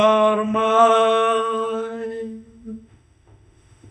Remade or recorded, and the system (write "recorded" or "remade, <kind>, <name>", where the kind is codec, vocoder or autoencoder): remade, autoencoder, DAC-VAE